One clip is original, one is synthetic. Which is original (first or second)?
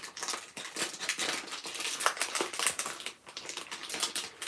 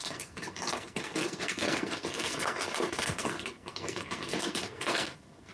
first